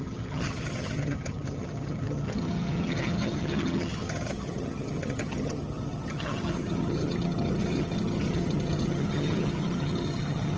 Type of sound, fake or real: fake